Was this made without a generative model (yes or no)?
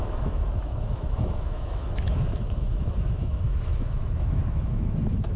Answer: no